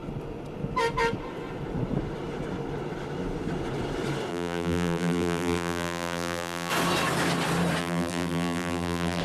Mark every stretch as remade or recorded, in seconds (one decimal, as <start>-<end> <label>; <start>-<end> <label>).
0.0-4.3 recorded; 4.3-6.7 remade; 6.7-7.8 recorded; 7.8-9.2 remade